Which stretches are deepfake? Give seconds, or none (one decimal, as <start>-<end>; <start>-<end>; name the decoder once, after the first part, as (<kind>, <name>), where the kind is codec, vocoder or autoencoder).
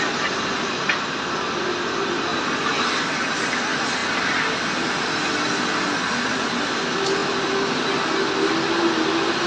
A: none